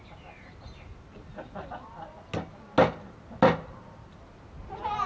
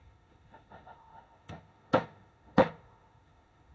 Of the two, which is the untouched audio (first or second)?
first